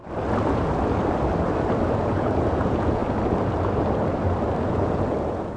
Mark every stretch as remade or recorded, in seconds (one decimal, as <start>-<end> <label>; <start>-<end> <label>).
0.0-1.9 recorded; 1.9-3.0 remade; 3.0-4.6 recorded; 4.6-5.6 remade